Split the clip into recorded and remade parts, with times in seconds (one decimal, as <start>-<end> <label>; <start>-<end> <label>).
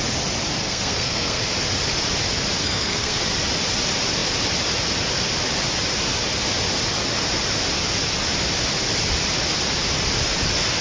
0.0-0.6 recorded; 0.6-1.4 remade; 1.4-2.6 recorded; 2.6-3.2 remade; 3.2-10.8 recorded